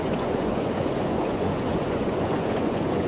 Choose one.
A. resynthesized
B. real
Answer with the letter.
A